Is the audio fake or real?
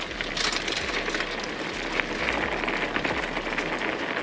real